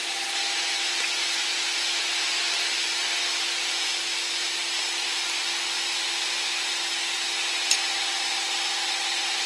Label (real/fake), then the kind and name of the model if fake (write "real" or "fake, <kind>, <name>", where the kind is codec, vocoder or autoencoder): real